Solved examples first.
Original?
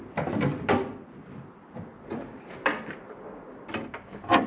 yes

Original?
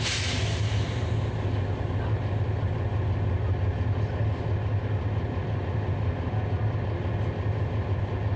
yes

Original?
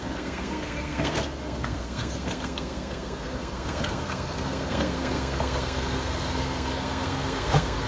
no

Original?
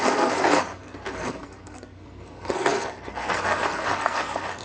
no